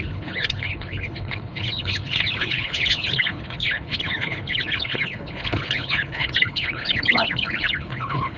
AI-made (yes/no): yes